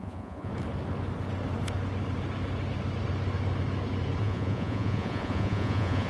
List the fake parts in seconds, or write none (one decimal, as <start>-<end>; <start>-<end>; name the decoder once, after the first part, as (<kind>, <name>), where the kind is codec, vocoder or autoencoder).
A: 0.0-0.5 (vocoder, Vocos); 4.2-6.1